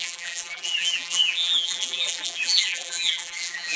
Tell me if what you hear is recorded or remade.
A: remade